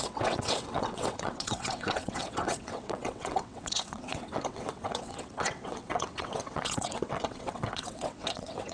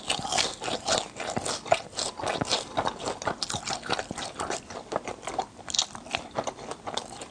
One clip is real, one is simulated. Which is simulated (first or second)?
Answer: first